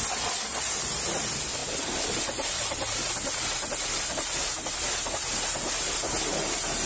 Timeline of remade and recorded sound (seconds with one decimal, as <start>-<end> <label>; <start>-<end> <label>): 0.0-6.9 recorded